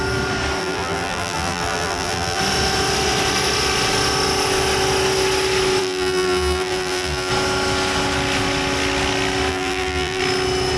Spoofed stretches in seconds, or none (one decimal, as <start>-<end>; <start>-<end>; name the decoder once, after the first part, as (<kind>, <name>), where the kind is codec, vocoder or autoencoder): 0.6-2.4 (vocoder, BigVGAN v2); 5.8-7.3; 9.5-10.2